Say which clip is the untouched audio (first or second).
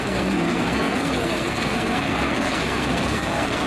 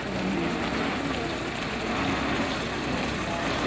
second